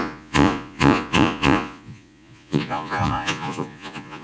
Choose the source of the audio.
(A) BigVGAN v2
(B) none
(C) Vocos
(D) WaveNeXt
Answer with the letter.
C